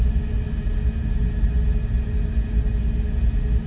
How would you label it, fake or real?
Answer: real